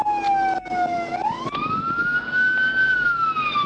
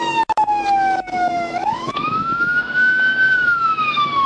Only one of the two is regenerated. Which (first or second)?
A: second